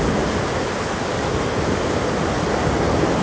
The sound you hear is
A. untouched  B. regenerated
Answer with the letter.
A